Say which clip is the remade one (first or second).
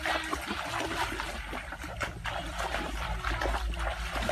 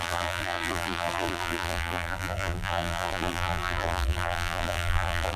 second